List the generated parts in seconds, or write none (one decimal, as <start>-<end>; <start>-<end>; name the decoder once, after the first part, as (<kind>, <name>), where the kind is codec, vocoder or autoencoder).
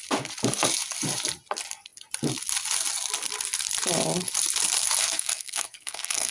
5.0-6.3 (codec, SNAC)